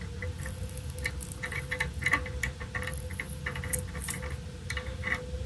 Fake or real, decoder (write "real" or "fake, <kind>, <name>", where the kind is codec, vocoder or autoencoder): real